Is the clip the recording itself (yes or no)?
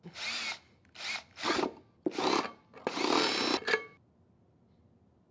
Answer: yes